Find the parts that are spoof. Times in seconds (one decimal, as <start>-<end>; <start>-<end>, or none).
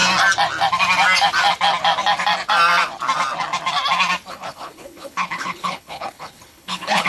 4.3-7.1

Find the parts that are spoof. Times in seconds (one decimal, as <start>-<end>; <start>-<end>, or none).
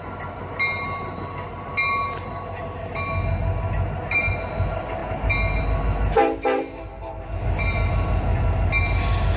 none